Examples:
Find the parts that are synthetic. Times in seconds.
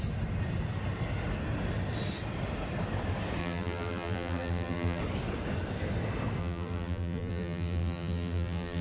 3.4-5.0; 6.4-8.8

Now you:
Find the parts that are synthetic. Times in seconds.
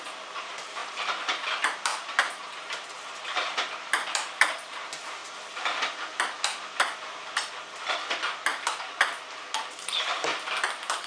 0.0-0.8; 1.5-5.2; 9.8-10.3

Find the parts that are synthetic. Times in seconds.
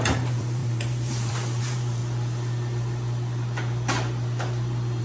0.0-2.0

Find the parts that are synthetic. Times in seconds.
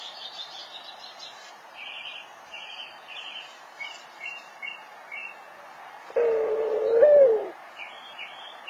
0.0-5.2; 6.6-8.7